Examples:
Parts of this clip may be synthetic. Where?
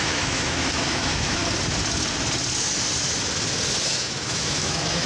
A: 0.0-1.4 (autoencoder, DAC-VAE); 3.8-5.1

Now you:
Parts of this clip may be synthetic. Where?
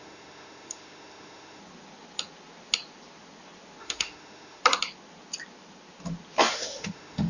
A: 0.0-1.6 (autoencoder, DAC-VAE); 3.8-4.6; 6.5-7.3